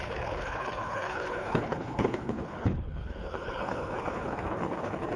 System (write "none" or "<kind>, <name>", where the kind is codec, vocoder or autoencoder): codec, HILCodec